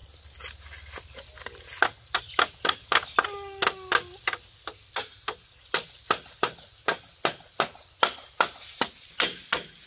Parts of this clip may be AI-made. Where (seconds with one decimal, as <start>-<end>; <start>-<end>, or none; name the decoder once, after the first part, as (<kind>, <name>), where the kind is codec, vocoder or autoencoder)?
none